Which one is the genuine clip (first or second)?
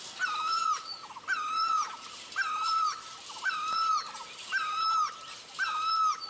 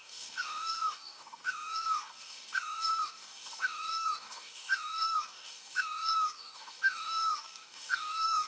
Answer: first